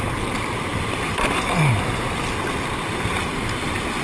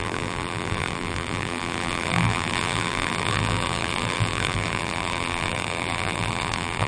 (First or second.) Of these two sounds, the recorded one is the first